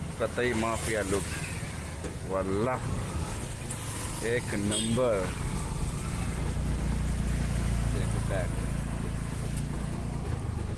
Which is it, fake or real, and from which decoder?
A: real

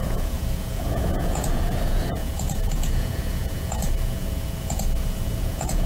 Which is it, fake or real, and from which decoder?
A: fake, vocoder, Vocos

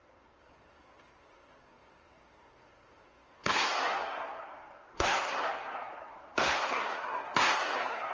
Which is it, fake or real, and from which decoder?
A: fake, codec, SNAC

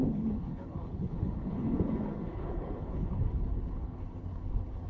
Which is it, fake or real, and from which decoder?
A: fake, codec, HILCodec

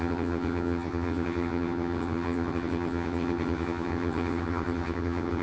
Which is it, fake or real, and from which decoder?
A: fake, vocoder, HiFi-GAN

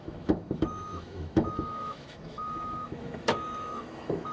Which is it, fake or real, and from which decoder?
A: fake, autoencoder, DAC-VAE